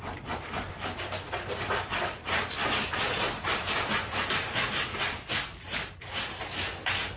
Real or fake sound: real